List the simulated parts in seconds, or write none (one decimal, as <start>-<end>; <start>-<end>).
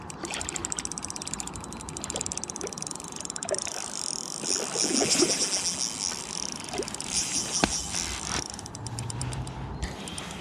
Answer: 0.0-0.6; 2.6-3.7; 6.2-10.4